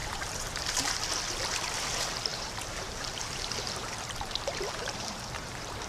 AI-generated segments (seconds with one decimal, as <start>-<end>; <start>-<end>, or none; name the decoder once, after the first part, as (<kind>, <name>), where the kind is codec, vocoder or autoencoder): 0.0-0.9 (vocoder, BigVGAN v2); 2.3-5.9